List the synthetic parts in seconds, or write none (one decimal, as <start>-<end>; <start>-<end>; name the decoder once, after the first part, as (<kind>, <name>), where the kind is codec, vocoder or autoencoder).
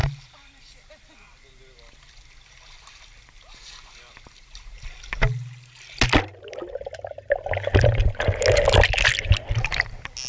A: none